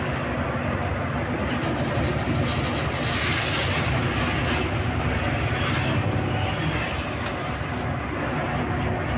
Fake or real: real